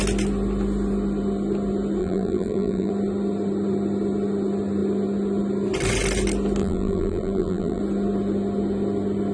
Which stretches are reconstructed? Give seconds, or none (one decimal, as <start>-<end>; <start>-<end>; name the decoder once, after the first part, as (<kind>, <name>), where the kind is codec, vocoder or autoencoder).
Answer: 2.0-2.9 (vocoder, BigVGAN v2); 6.6-7.8